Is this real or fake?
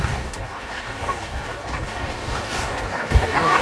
fake